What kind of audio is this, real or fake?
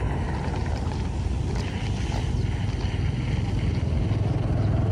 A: real